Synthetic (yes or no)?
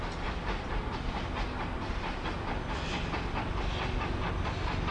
no